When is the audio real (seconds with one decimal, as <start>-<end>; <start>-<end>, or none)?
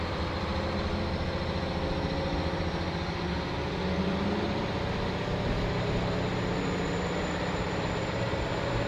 0.5-4.2